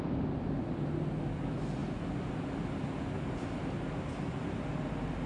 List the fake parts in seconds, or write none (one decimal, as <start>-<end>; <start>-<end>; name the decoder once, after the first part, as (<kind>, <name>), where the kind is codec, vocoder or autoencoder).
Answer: none